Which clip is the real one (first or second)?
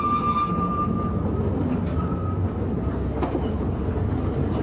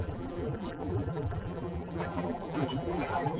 first